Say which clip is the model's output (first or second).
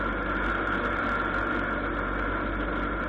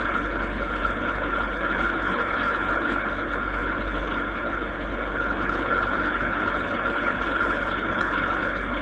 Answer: second